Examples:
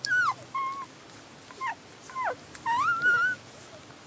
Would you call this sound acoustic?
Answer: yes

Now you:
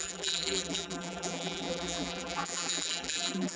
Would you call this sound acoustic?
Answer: no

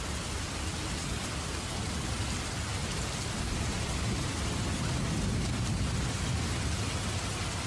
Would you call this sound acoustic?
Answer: yes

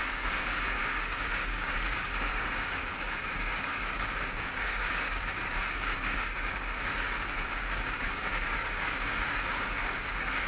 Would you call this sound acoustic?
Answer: no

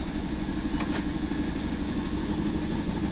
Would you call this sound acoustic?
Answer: no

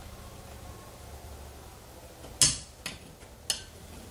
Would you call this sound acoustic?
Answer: yes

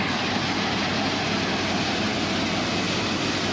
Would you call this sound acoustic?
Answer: yes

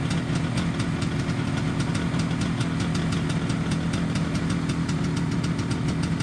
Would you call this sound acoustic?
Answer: yes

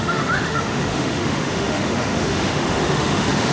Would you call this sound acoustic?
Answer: no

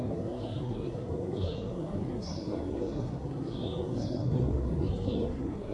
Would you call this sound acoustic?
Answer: no